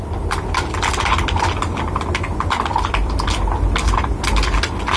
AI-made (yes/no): no